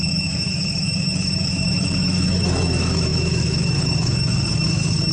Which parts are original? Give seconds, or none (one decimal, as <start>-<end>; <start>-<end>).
none